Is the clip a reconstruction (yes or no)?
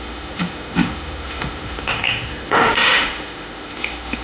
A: yes